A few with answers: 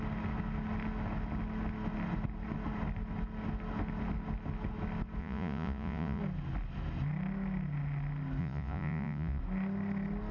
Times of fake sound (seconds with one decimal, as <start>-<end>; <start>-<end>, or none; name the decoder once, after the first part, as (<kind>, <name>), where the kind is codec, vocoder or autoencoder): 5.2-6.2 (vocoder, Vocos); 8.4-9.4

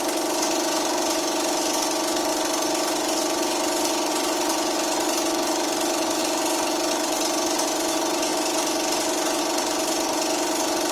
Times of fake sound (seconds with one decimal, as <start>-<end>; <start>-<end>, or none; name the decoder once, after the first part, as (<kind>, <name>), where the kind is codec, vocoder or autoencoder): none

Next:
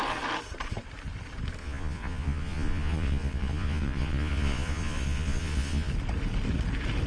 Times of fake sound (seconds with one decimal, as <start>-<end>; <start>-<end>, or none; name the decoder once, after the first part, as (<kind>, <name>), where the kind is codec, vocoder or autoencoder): 1.6-5.9 (vocoder, Vocos)